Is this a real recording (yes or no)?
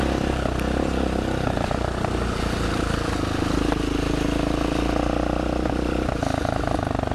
yes